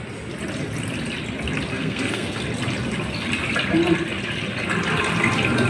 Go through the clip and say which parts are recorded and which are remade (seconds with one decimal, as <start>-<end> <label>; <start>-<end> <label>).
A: 0.0-1.7 recorded; 1.7-2.4 remade; 2.4-5.7 recorded